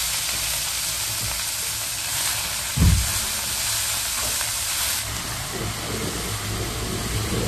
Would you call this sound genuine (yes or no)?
yes